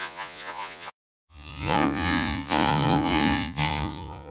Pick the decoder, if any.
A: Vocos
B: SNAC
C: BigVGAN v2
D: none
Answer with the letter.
A